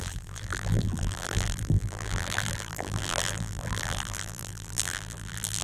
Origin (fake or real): fake